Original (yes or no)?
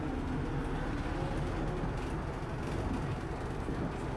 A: yes